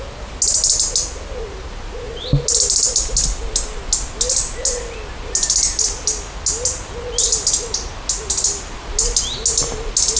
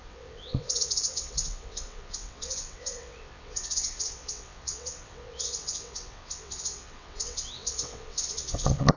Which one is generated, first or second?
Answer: second